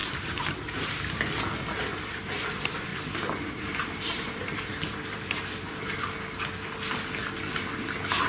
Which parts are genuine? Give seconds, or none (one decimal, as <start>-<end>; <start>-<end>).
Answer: 1.2-2.9; 6.0-8.3